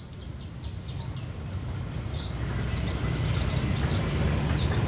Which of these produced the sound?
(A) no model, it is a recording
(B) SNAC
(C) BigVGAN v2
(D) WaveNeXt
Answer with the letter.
A